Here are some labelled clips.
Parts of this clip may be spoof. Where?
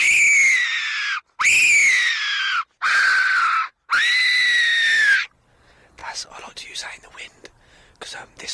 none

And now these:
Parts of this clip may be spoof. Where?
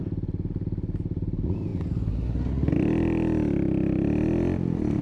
none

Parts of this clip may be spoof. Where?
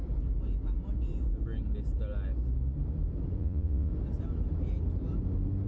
3.4-3.9 (vocoder, Vocos)